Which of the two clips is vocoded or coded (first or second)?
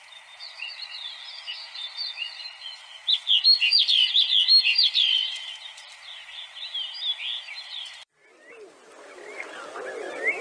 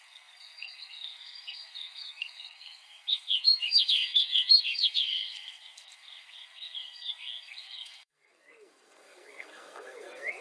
second